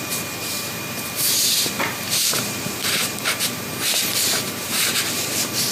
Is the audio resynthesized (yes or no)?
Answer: yes